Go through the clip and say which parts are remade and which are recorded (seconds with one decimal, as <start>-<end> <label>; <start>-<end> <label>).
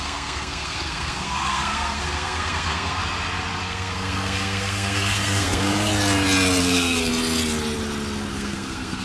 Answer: 0.0-3.0 remade; 3.0-3.7 recorded; 3.7-5.9 remade; 5.9-6.6 recorded; 6.6-7.1 remade; 7.1-8.3 recorded; 8.3-9.0 remade